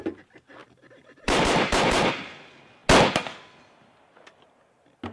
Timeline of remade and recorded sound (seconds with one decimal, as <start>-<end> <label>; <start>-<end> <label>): 0.0-0.6 recorded; 0.6-2.1 remade; 2.1-5.1 recorded